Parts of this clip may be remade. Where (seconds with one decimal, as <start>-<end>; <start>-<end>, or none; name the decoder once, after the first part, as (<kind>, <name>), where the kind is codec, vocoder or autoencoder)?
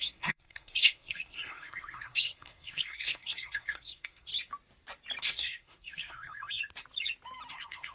0.0-4.3 (codec, SNAC); 5.2-6.6; 7.5-7.9